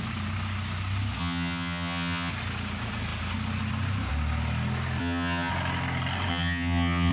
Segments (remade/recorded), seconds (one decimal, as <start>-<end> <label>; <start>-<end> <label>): 0.0-1.2 recorded; 1.2-2.3 remade; 2.3-5.0 recorded; 5.0-5.5 remade; 5.5-6.3 recorded; 6.3-7.1 remade